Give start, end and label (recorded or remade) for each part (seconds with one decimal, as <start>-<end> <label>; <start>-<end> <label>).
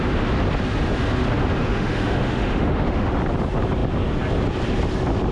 0.0-1.6 recorded; 1.6-3.1 remade; 3.1-5.3 recorded